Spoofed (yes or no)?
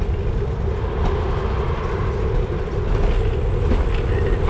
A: no